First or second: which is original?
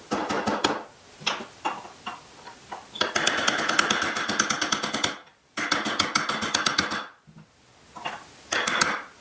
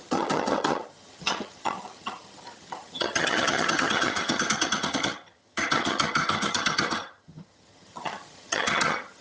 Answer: first